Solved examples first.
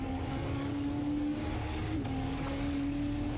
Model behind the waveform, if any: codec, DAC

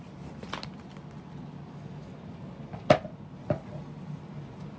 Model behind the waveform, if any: none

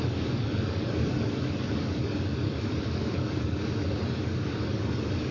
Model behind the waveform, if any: codec, DAC